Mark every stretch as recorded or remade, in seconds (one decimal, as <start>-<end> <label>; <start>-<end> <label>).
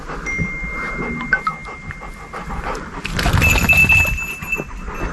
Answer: 0.0-5.1 recorded